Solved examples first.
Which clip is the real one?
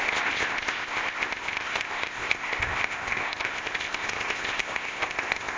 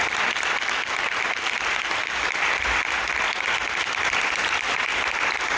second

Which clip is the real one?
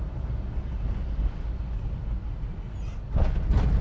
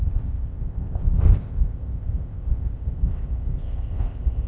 first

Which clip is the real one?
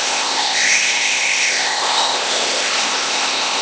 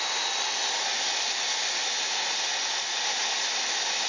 second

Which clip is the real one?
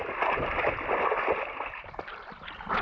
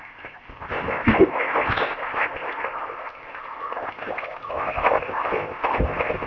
first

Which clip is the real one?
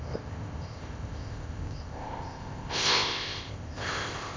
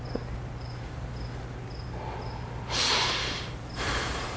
second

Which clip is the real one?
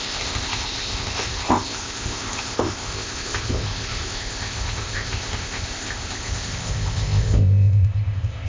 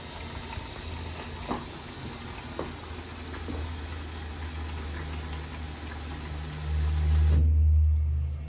second